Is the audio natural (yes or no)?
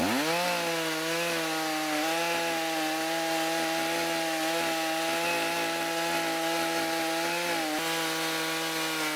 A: yes